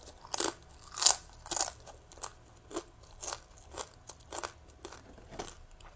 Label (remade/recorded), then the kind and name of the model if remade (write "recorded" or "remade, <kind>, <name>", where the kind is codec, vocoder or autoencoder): recorded